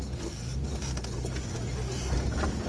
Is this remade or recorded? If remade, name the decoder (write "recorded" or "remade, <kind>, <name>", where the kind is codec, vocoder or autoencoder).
recorded